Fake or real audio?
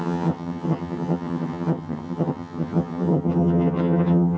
fake